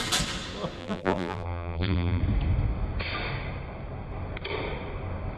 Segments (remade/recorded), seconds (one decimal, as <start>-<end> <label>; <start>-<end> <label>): 0.0-0.8 recorded; 0.8-2.2 remade; 2.2-5.4 recorded